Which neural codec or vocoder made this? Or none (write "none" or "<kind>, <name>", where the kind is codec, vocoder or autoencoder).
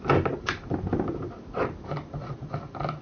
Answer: none